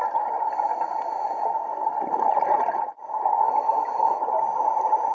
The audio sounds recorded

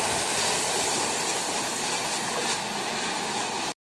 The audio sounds recorded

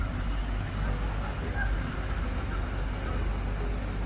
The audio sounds recorded